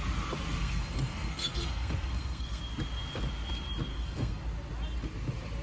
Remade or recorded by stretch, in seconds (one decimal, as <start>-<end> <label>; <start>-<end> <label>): 0.0-0.6 recorded; 0.6-2.6 remade; 2.6-3.9 recorded; 3.9-4.4 remade; 4.4-5.6 recorded